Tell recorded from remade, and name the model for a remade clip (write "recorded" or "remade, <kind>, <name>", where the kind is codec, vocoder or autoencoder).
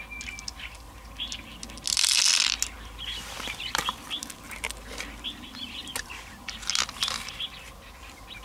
recorded